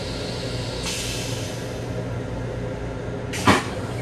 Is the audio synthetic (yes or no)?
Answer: no